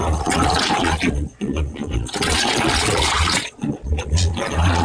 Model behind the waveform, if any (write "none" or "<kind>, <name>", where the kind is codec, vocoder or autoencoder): vocoder, Vocos